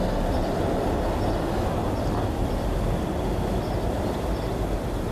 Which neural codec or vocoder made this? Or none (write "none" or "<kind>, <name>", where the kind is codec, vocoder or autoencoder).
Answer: none